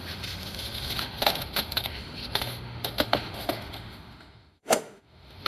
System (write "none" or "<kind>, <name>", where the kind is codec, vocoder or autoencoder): autoencoder, DAC-VAE